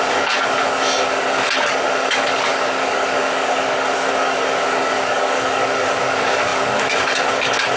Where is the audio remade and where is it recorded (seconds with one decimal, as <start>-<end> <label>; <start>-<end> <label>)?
0.0-7.8 remade